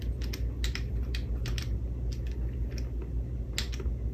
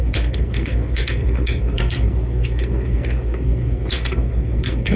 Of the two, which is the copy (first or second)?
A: second